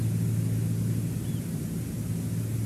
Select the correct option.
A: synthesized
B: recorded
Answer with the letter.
B